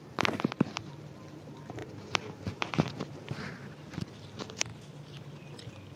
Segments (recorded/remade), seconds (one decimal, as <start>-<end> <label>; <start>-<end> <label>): 0.0-4.7 remade; 4.7-6.0 recorded